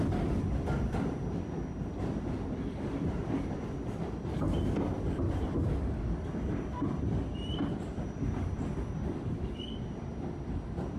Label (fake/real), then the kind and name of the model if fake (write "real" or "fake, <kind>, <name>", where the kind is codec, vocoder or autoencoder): fake, vocoder, BigVGAN v2